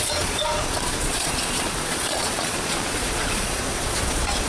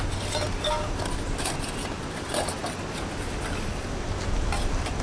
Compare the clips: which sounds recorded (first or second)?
second